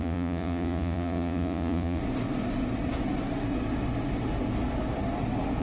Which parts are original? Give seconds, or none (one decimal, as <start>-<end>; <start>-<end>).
2.0-5.6